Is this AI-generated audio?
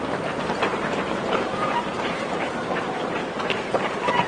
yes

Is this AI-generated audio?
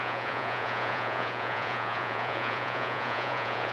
yes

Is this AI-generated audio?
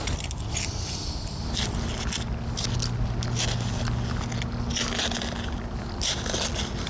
no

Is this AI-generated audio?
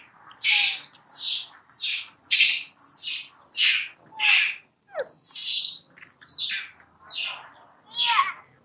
no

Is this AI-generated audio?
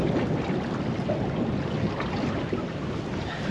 no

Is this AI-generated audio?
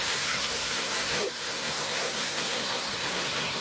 yes